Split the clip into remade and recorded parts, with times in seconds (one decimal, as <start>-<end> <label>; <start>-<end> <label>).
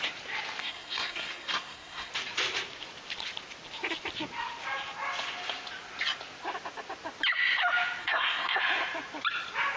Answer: 0.0-0.6 recorded; 0.6-2.1 remade; 2.1-8.0 recorded; 8.0-8.6 remade; 8.6-9.8 recorded